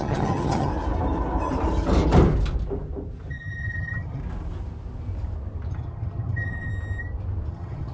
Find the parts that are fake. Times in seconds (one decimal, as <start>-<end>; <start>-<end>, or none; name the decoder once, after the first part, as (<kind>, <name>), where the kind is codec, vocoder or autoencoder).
0.0-0.7 (vocoder, HiFi-GAN); 3.3-4.2; 5.7-6.7; 7.5-7.9